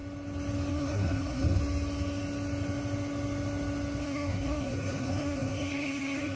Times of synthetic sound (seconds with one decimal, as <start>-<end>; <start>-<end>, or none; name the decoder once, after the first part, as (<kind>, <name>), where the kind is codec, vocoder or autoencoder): 0.7-1.6 (codec, SNAC); 4.0-6.4